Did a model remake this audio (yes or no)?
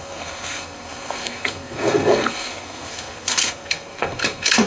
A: yes